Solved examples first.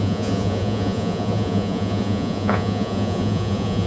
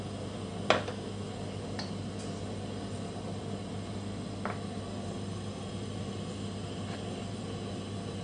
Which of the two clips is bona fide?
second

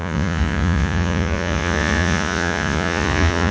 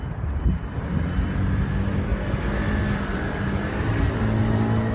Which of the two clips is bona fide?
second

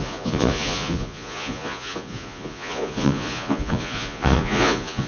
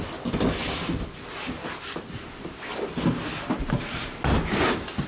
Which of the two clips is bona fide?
second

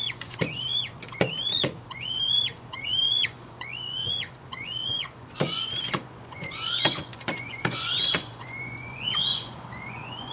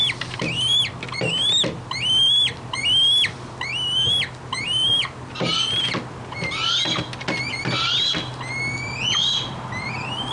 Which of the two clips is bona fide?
second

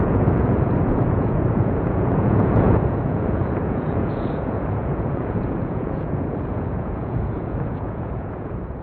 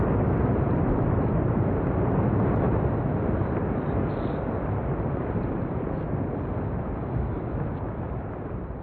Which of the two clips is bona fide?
second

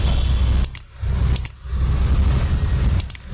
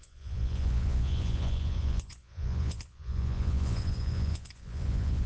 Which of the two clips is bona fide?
first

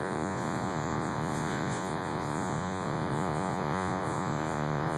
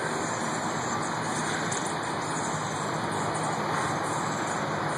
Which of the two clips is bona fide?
second